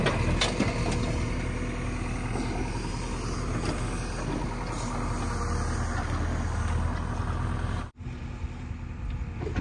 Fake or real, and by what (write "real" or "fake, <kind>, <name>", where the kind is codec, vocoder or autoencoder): real